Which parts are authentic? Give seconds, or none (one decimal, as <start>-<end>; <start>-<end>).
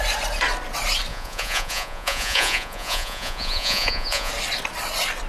0.0-1.1; 4.3-5.3